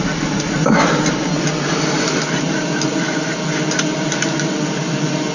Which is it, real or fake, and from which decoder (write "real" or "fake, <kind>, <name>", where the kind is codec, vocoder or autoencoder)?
real